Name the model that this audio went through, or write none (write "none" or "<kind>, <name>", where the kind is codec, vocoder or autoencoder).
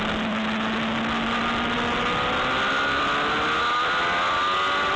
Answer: none